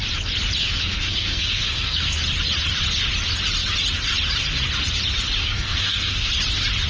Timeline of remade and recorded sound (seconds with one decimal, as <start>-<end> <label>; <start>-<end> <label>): 0.0-0.6 recorded; 0.6-2.2 remade; 2.2-5.4 recorded; 5.4-6.3 remade; 6.3-6.9 recorded